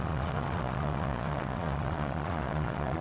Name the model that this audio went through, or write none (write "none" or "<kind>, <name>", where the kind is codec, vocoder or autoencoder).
vocoder, Vocos